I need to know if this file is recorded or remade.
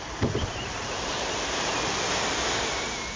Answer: remade